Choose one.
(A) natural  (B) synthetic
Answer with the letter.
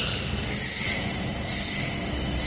A